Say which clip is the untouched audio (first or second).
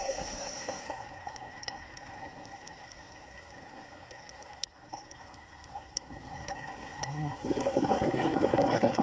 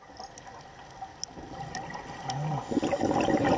second